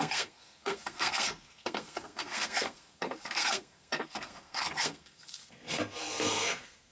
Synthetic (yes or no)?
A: yes